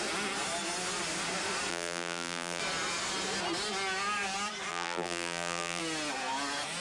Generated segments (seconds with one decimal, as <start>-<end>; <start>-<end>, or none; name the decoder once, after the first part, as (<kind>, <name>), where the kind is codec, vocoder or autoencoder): 1.7-2.6 (vocoder, BigVGAN v2); 4.7-5.8